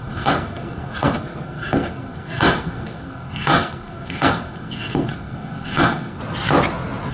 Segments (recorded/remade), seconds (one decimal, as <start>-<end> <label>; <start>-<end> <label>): 0.0-6.2 remade; 6.2-7.1 recorded